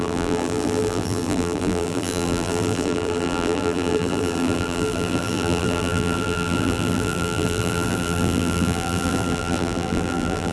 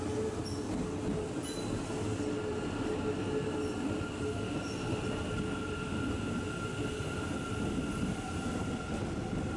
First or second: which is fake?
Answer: first